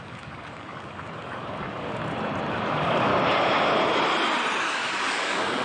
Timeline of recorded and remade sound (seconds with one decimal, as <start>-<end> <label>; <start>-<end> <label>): 0.0-2.0 remade; 2.0-2.5 recorded; 2.5-3.1 remade; 3.1-4.6 recorded; 4.6-5.6 remade